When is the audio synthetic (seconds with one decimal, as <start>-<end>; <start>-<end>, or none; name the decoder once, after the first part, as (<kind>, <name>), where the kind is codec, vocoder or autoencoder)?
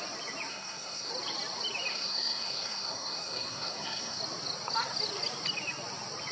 0.5-1.1 (codec, SNAC); 1.9-4.2